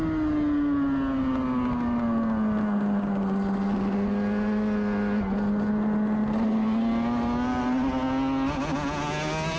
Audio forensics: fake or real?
real